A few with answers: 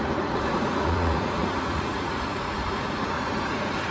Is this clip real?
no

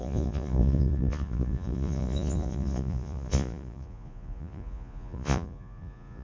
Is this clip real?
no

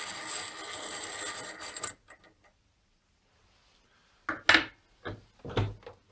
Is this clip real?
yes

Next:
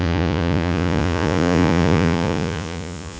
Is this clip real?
no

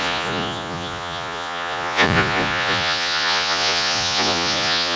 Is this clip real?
no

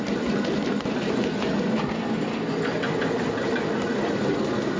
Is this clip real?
yes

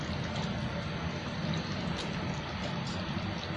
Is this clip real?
yes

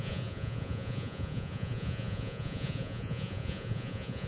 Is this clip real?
no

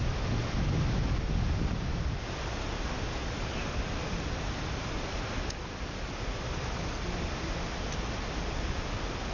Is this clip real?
yes